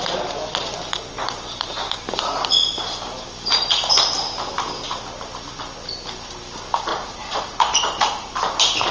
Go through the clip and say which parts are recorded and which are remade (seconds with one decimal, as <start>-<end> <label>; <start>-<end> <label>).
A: 0.0-6.9 recorded; 6.9-8.3 remade; 8.3-8.9 recorded